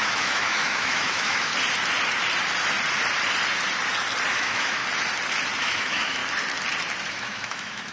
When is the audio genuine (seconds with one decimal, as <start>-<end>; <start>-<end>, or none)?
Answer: 1.5-4.3; 4.8-5.6; 6.2-7.1